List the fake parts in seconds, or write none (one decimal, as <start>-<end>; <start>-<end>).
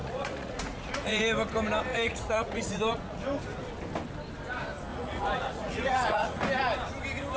0.0-1.2; 1.9-3.2; 4.9-6.4